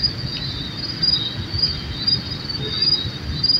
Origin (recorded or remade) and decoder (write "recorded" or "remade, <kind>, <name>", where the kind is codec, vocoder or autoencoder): recorded